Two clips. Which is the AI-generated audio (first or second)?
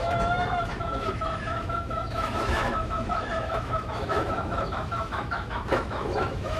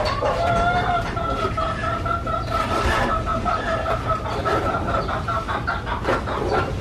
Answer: first